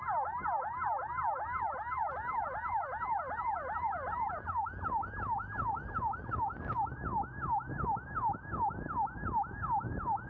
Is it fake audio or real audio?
real